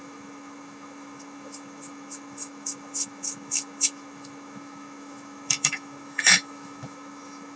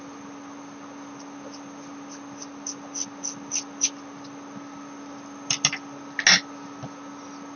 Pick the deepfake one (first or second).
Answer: first